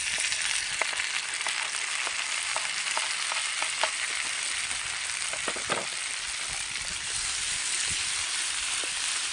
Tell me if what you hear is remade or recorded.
recorded